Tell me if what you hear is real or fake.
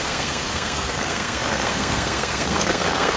fake